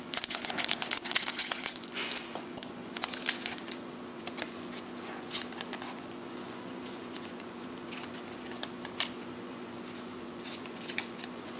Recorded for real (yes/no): no